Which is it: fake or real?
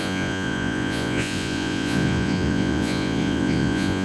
fake